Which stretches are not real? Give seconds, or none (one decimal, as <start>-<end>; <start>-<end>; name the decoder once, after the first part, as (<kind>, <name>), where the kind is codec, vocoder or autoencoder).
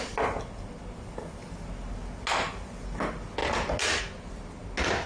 none